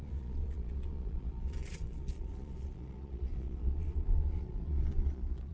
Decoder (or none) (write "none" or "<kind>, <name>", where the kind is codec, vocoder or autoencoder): vocoder, Vocos